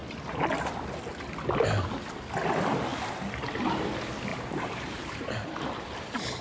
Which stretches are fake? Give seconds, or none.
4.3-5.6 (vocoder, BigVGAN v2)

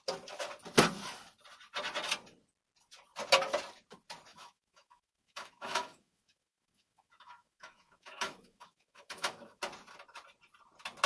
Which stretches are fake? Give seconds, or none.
4.3-9.6 (autoencoder, DAC-VAE)

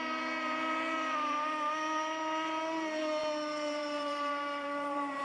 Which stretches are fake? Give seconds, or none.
3.2-5.2 (vocoder, BigVGAN v2)